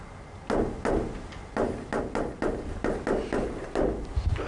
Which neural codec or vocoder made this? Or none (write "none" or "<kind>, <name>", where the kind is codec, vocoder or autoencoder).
none